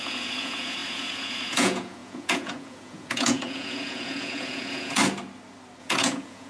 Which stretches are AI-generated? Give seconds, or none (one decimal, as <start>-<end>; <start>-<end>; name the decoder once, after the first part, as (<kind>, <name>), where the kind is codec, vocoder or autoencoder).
0.0-5.0 (vocoder, Vocos); 5.8-6.5